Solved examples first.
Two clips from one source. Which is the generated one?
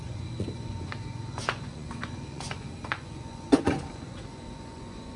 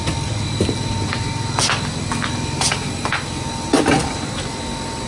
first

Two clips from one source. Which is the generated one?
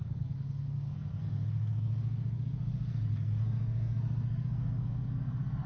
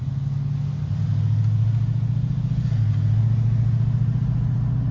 first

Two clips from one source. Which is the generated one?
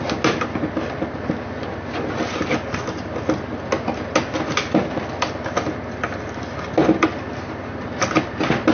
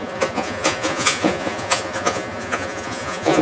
second